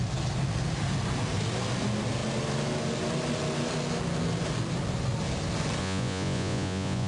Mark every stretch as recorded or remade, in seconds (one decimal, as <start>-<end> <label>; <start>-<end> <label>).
0.0-5.8 recorded; 5.8-7.1 remade